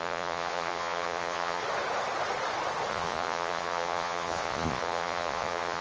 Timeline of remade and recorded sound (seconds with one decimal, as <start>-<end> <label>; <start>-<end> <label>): 0.0-1.6 remade; 1.6-2.9 recorded; 2.9-5.8 remade